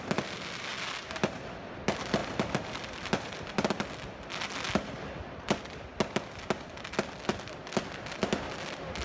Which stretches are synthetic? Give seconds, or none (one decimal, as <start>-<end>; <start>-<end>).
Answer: none